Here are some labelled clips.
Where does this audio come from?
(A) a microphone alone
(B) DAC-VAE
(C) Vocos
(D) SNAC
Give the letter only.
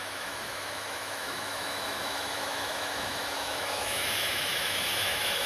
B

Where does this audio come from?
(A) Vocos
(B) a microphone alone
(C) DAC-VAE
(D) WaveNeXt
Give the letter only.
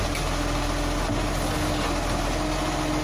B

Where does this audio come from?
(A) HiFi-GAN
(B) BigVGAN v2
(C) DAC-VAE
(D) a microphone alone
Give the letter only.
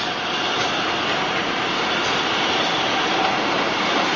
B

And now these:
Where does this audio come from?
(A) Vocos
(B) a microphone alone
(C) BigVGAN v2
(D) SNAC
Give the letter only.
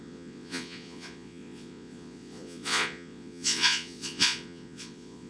A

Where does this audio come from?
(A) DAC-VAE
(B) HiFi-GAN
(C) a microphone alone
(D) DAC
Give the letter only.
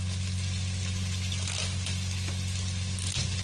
C